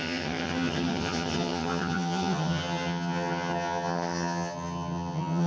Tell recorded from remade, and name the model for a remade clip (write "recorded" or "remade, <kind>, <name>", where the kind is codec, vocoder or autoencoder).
remade, vocoder, HiFi-GAN